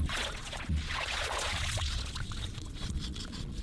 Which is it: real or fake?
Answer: fake